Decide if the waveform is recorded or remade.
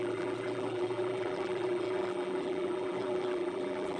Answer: remade